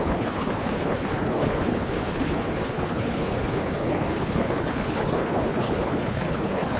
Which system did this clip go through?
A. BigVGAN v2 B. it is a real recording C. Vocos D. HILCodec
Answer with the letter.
D